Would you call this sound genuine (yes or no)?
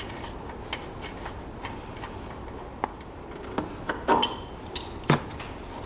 yes